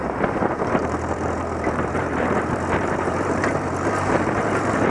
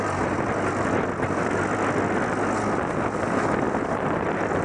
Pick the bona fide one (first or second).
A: second